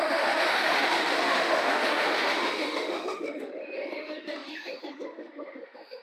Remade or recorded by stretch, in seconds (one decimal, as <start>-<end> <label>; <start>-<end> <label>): 0.0-6.0 remade